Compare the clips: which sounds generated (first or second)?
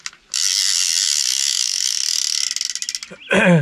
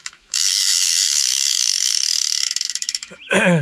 second